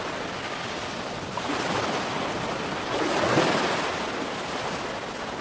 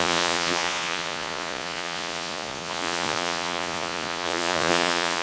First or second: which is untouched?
first